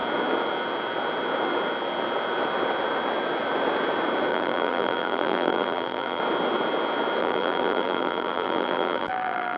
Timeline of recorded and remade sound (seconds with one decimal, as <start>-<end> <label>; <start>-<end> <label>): 0.0-4.3 recorded; 4.3-6.2 remade; 6.2-7.2 recorded; 7.2-9.6 remade